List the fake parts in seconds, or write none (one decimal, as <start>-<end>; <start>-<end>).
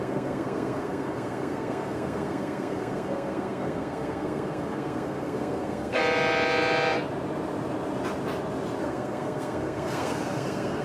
0.0-6.0; 8.8-10.8